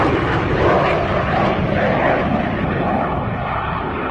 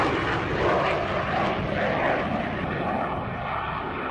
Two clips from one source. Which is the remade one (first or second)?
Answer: first